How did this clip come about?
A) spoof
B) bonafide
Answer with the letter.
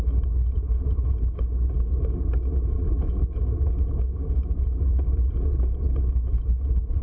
B